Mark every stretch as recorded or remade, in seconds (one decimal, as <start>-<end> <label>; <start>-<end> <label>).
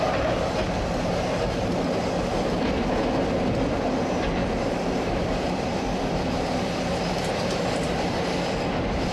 0.0-4.4 recorded; 4.4-7.2 remade; 7.2-9.1 recorded